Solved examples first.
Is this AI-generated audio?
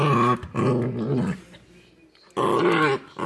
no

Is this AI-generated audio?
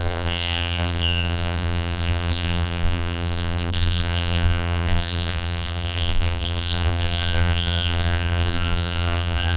yes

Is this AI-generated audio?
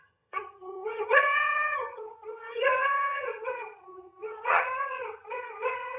yes